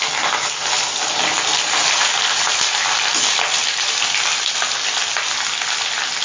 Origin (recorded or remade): recorded